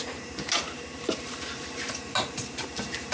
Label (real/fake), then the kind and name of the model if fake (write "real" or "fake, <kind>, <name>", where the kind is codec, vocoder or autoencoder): fake, vocoder, BigVGAN v2